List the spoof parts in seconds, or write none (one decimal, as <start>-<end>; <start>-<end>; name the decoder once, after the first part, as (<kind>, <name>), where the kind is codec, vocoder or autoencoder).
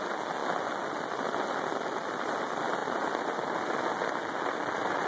none